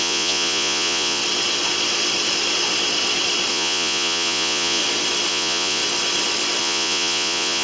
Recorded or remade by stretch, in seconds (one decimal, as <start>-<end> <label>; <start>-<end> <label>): 0.0-1.2 remade; 1.2-3.5 recorded; 3.5-4.8 remade; 4.8-5.3 recorded; 5.3-5.8 remade; 5.8-6.6 recorded; 6.6-7.6 remade